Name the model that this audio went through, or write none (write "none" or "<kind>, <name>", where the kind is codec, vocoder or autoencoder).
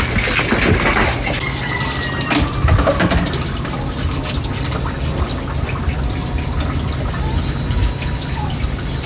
none